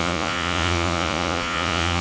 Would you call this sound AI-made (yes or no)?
yes